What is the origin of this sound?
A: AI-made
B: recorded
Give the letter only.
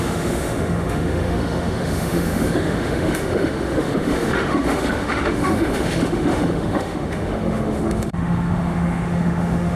A